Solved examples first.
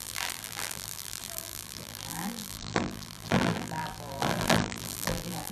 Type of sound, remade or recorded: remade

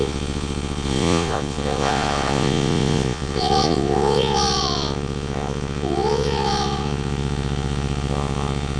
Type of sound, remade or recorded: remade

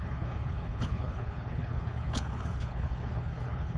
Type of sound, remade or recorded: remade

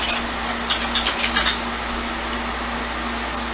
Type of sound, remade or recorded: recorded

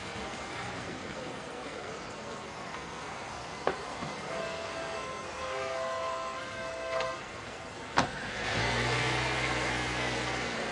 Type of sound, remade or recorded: remade